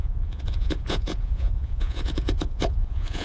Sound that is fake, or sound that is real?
fake